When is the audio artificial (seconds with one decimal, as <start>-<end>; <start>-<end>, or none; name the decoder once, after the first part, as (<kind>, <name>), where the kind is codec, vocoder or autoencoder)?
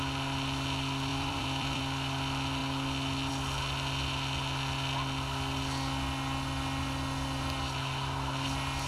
1.1-1.8 (vocoder, BigVGAN v2)